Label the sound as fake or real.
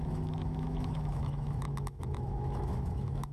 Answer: fake